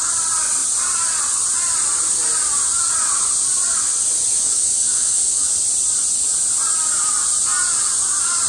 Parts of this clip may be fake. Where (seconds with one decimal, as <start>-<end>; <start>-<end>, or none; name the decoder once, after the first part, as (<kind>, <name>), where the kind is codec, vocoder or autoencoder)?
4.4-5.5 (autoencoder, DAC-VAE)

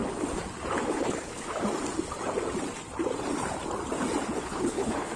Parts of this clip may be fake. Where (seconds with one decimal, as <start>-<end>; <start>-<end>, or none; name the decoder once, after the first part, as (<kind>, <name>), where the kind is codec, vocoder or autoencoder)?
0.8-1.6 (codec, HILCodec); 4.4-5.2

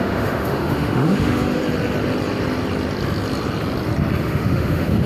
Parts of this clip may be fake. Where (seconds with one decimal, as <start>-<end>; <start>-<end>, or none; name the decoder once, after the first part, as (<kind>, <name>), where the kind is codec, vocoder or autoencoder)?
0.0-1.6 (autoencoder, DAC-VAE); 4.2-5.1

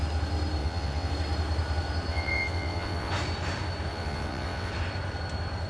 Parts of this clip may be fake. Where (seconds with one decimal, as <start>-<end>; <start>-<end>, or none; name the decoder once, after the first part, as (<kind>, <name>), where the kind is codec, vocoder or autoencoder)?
0.6-1.1 (vocoder, WaveNeXt); 2.1-3.1; 3.9-4.7

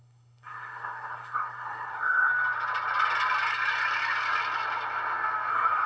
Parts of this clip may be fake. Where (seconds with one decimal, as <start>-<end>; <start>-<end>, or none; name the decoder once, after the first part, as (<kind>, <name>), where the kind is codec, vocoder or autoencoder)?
0.0-2.3 (codec, SNAC); 5.5-5.9